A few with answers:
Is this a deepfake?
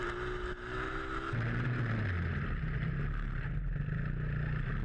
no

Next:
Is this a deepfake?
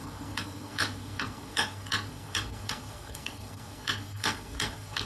yes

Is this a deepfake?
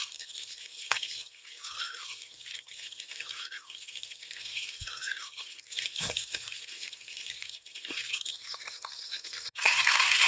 yes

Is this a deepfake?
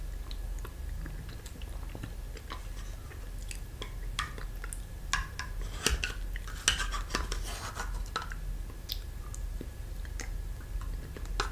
no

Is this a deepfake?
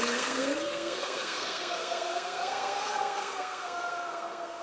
yes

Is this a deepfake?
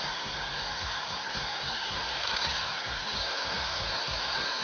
yes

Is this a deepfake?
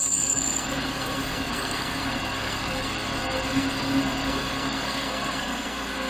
yes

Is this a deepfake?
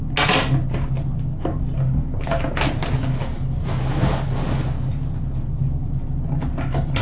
no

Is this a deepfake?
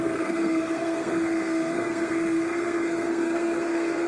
yes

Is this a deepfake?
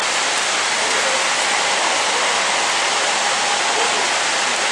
no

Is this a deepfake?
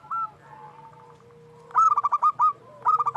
no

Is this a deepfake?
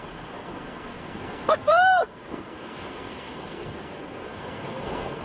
yes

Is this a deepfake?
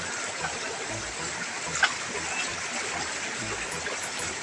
no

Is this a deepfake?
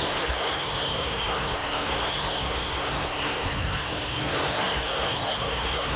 yes